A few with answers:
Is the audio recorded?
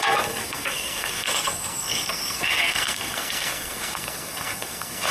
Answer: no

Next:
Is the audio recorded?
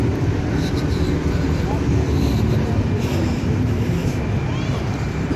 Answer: no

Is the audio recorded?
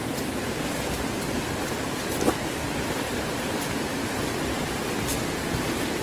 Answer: yes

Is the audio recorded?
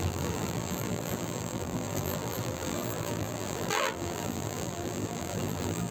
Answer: no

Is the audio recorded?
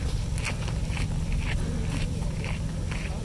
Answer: yes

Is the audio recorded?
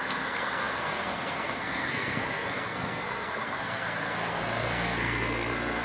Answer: no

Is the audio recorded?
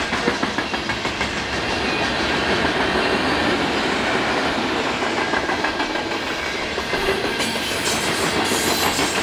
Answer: yes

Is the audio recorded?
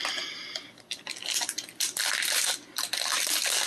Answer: yes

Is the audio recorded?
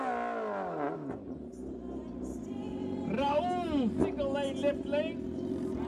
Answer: yes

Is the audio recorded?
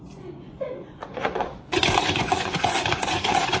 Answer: no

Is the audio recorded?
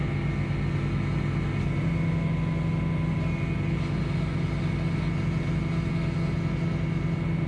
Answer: yes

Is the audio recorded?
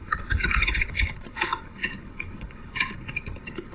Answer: no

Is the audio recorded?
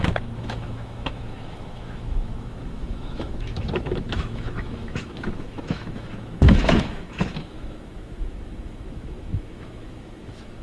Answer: no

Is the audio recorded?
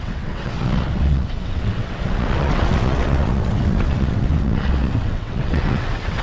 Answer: no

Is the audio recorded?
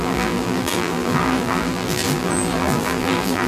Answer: no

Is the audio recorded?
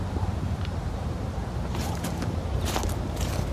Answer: no